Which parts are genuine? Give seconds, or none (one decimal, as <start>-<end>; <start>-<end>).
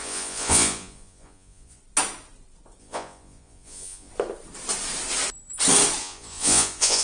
1.8-2.8; 4.1-6.0